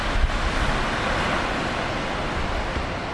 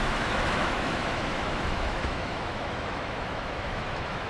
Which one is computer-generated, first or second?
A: second